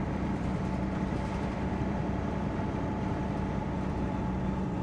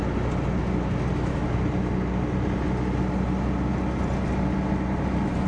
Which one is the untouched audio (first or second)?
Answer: second